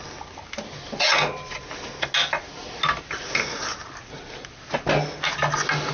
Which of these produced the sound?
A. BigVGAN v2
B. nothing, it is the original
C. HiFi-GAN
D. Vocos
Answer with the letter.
B